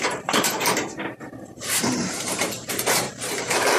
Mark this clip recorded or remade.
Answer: remade